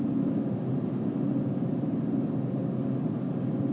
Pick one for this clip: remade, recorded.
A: recorded